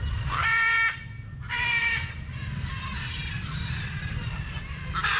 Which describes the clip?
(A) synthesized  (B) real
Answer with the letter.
B